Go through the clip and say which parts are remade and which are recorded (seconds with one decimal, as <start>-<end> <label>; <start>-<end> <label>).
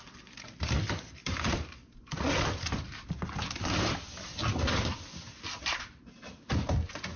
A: 0.0-1.2 recorded; 1.2-2.1 remade; 2.1-5.6 recorded; 5.6-6.5 remade; 6.5-7.2 recorded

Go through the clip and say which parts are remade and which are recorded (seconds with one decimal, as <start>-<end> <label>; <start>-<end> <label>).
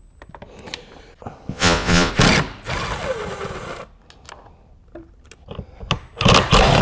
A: 0.0-1.5 recorded; 1.5-2.1 remade; 2.1-6.8 recorded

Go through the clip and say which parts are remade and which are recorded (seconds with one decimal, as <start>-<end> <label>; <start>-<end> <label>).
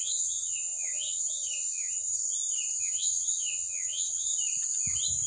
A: 0.0-2.2 remade; 2.2-2.8 recorded; 2.8-4.3 remade; 4.3-5.3 recorded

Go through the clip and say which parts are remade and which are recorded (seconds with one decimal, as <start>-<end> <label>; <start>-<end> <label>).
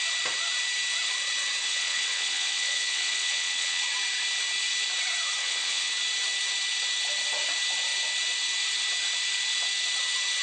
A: 0.0-1.6 recorded; 1.6-3.8 remade; 3.8-5.4 recorded; 5.4-5.9 remade; 5.9-10.4 recorded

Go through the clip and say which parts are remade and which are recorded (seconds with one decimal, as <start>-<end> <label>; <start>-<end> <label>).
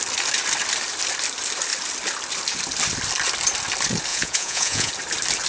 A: 0.0-4.1 recorded; 4.1-4.9 remade; 4.9-5.5 recorded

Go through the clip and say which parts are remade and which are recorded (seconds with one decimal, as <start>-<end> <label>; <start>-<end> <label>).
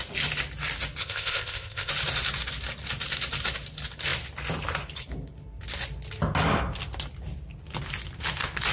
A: 0.0-1.0 recorded; 1.0-1.9 remade; 1.9-8.7 recorded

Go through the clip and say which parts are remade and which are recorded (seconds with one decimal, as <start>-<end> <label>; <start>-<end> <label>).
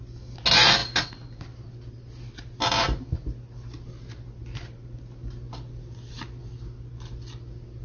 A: 0.0-7.8 recorded